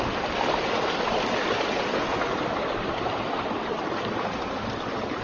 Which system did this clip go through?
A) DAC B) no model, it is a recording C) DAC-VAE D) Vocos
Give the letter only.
B